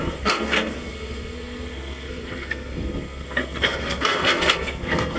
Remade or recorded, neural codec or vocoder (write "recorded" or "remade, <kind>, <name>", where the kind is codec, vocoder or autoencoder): remade, codec, SNAC